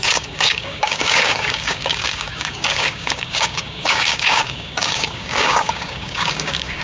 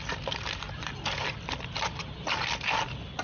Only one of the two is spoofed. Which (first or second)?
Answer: first